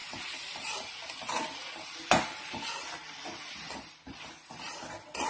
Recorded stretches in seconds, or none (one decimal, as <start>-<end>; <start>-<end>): 0.0-5.3